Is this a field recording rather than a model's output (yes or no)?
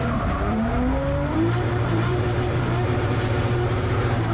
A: no